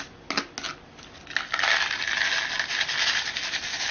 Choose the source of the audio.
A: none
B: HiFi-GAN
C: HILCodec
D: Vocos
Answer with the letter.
A